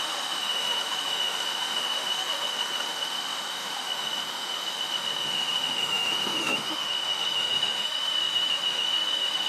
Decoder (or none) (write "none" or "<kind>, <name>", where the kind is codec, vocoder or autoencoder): autoencoder, DAC-VAE